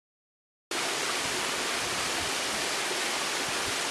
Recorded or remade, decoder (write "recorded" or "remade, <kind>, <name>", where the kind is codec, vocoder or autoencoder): recorded